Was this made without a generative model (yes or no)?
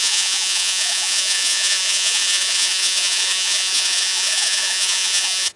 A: no